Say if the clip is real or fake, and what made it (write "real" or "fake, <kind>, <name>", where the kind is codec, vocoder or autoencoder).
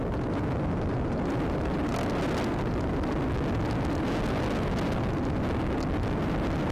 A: real